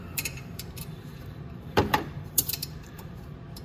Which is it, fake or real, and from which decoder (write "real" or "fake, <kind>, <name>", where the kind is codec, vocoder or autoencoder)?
fake, vocoder, BigVGAN v2